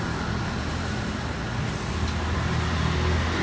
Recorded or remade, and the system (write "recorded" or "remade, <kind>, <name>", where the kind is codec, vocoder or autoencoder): recorded